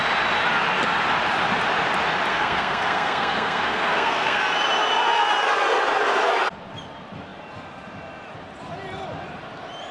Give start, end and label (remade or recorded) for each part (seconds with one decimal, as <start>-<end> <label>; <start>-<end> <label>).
0.0-2.3 recorded; 2.3-4.4 remade; 4.4-9.9 recorded